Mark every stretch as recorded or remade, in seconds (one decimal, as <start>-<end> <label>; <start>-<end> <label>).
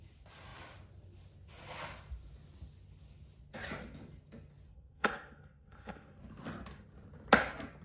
0.0-4.7 recorded; 4.7-6.2 remade; 6.2-7.8 recorded